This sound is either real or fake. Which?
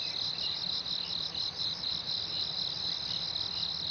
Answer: real